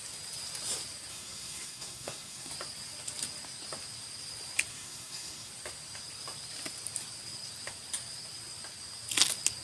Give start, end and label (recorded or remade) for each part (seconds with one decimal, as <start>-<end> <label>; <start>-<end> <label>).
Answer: 0.0-1.1 recorded; 1.1-2.5 remade; 2.5-4.7 recorded; 4.7-5.5 remade; 5.5-9.6 recorded